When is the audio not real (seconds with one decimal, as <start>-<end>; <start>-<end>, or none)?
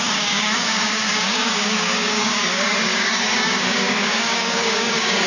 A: 0.0-5.3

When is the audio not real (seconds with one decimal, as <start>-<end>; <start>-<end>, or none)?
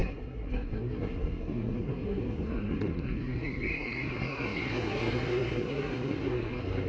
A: 0.0-6.9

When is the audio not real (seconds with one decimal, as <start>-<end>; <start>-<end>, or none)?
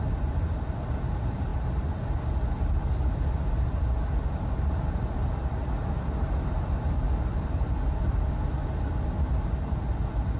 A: none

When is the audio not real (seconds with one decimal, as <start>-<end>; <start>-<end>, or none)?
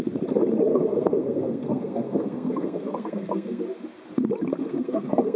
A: 0.7-3.6; 4.6-5.4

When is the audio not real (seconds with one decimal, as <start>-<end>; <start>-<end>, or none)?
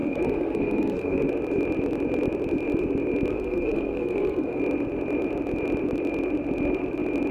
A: 0.0-1.3; 3.3-4.6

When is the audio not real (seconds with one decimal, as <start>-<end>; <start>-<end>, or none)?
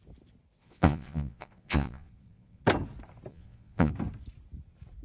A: 0.6-2.6; 3.3-3.9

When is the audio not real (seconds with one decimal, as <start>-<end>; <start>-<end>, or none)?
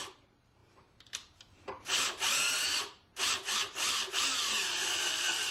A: 0.0-4.3; 5.1-5.5